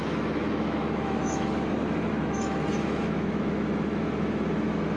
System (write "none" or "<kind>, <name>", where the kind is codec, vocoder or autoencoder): autoencoder, DAC-VAE